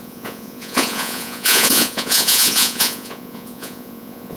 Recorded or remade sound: remade